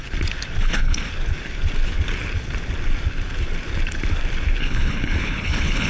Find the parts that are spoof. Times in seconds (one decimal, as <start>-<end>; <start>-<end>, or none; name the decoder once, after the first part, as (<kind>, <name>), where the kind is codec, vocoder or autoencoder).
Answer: 0.6-1.1 (codec, HILCodec); 4.6-5.9